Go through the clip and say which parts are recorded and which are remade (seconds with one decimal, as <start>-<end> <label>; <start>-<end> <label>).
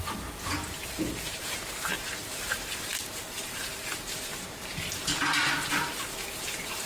0.0-6.9 remade